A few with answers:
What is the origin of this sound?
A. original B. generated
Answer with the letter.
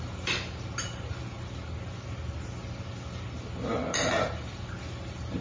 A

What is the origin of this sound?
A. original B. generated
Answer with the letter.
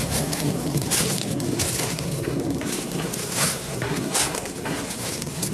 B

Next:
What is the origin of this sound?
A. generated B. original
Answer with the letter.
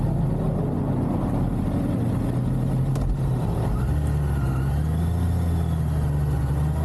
B